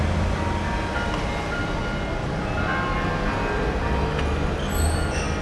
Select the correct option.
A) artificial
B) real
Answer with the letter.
B